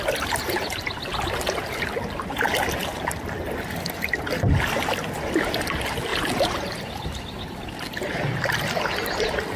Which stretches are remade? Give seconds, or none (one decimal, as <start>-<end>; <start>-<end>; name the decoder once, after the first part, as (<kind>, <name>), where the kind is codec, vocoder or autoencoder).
none